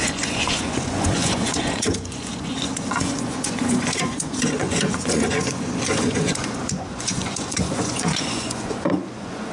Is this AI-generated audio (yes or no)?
yes